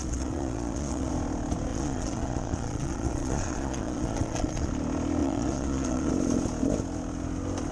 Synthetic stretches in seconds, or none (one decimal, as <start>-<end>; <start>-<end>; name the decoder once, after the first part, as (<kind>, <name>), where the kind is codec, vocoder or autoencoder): 0.0-1.1 (vocoder, Vocos); 1.7-4.7; 5.2-6.1

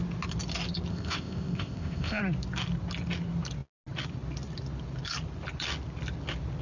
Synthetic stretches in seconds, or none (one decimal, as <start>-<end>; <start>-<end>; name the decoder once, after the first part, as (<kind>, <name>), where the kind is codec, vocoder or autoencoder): 0.9-2.2 (codec, ZipCodec)